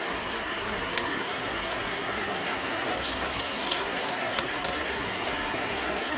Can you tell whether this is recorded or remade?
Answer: remade